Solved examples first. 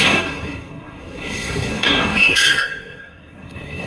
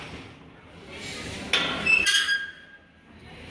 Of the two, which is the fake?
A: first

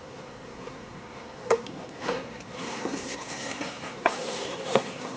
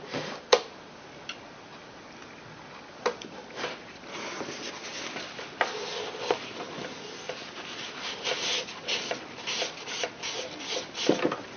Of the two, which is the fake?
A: first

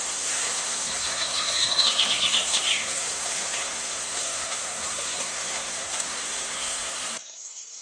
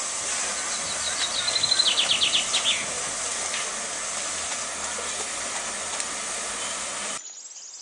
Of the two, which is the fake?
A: first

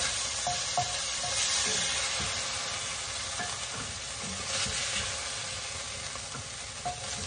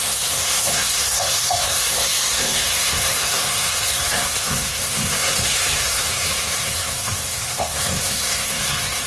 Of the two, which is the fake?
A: second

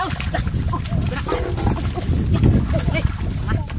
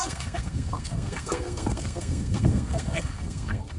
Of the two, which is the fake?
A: second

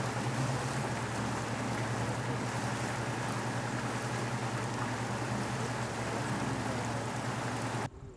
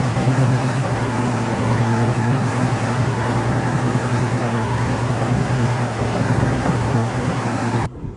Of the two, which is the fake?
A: second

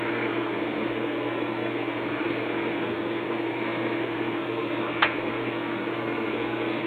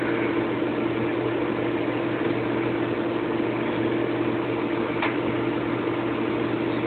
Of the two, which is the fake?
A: first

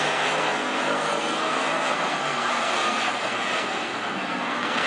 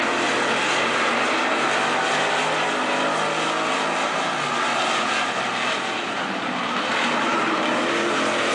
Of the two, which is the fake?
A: first